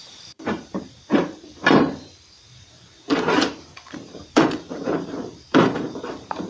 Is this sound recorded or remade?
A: remade